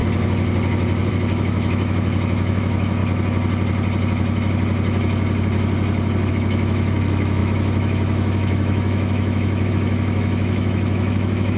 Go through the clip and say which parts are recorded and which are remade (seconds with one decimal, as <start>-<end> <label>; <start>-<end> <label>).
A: 0.0-1.1 recorded; 1.1-3.0 remade; 3.0-6.3 recorded; 6.3-11.6 remade